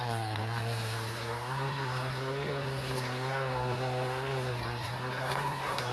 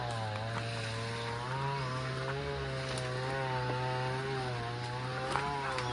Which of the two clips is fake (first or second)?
first